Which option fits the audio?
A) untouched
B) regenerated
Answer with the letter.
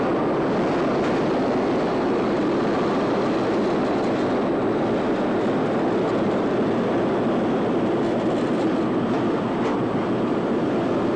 A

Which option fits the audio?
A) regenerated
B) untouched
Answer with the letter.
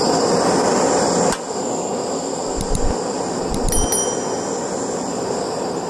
B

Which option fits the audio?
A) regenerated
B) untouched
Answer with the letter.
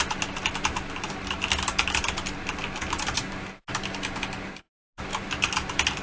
B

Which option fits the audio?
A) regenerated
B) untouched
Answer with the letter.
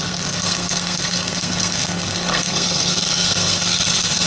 A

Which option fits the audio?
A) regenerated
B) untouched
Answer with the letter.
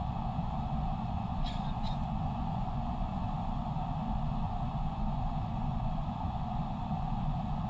A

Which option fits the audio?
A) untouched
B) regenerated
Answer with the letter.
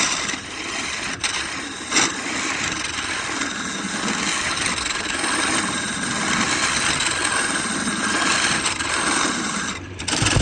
A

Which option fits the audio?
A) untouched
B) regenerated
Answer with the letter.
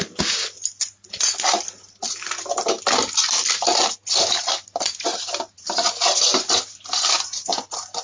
A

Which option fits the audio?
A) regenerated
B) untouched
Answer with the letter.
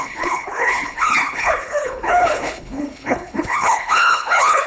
A